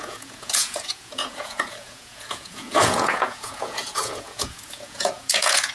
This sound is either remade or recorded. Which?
remade